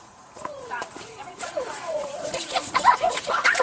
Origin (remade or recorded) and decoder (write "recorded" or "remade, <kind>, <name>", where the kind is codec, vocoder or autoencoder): remade, vocoder, Vocos